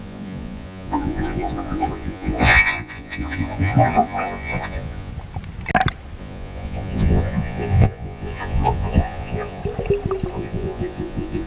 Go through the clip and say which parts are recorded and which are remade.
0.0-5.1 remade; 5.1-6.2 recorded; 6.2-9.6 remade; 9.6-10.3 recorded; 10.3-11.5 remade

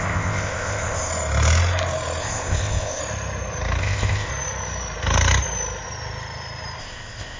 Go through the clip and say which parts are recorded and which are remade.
0.0-1.1 remade; 1.1-2.2 recorded; 2.2-3.0 remade; 3.0-3.8 recorded; 3.8-4.3 remade; 4.3-6.8 recorded; 6.8-7.4 remade

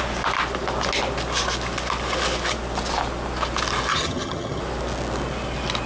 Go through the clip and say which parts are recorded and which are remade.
0.0-3.9 recorded; 3.9-4.6 remade; 4.6-5.9 recorded

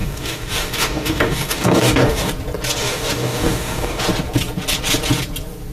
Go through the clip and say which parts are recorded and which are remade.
0.0-2.3 remade; 2.3-2.8 recorded; 2.8-4.0 remade; 4.0-5.7 recorded

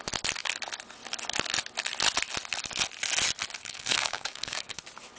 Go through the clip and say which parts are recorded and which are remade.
0.0-3.6 recorded; 3.6-4.8 remade; 4.8-5.2 recorded